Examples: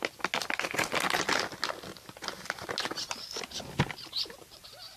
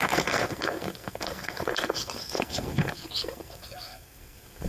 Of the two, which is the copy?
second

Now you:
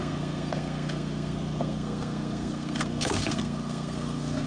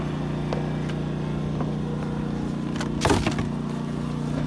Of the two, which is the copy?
first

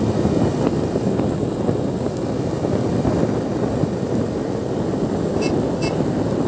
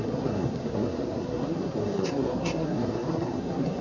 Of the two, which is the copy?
second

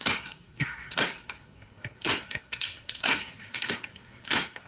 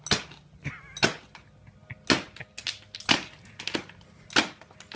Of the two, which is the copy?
first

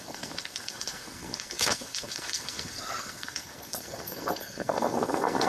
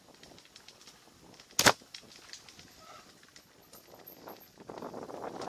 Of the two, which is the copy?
first